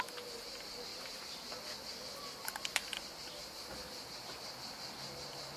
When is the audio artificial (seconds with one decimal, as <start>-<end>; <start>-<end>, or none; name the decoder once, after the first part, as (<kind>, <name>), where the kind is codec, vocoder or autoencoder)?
none